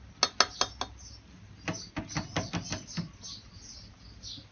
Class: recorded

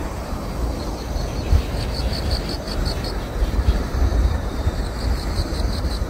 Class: remade